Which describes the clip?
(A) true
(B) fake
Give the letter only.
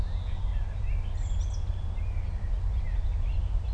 A